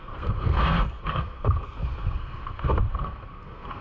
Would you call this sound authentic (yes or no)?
no